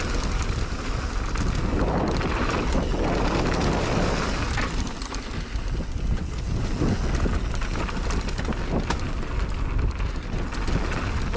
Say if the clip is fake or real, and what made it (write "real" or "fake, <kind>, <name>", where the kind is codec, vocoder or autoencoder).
real